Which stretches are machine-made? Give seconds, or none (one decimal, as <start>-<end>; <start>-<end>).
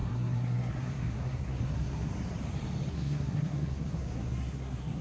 0.0-2.1; 2.9-5.0